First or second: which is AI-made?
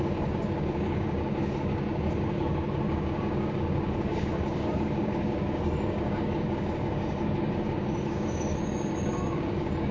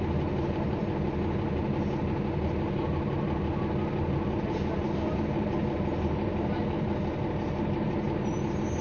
first